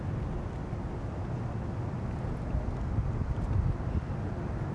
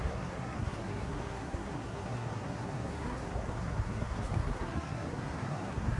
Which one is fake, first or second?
second